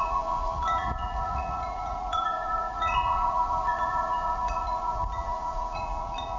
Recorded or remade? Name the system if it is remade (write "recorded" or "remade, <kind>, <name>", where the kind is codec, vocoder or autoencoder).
remade, vocoder, Vocos